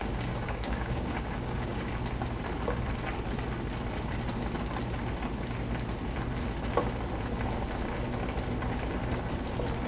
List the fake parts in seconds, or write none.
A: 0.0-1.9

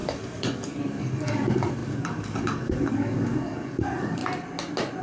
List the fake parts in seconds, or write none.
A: 0.0-4.2

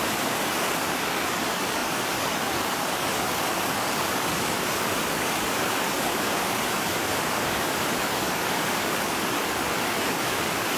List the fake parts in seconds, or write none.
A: 0.0-10.8

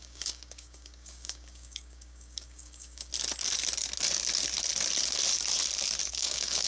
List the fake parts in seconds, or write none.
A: 0.0-3.1; 6.1-6.7

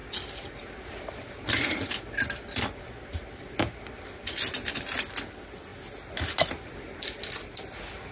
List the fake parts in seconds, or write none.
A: none

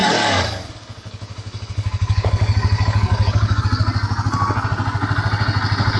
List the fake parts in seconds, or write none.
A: 0.0-3.6

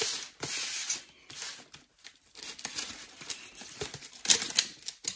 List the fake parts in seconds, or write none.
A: none

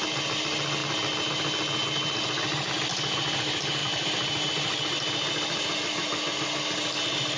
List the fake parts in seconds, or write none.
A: none